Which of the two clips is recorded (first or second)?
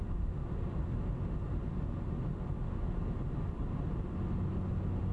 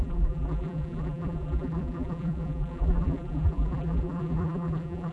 first